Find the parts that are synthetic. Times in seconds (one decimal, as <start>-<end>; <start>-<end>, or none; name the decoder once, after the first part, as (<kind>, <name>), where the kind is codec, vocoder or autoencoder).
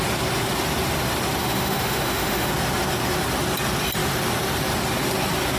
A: 1.4-2.5 (autoencoder, DAC-VAE)